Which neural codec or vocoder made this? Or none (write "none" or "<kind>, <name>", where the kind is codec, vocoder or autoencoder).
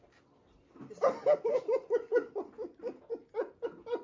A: none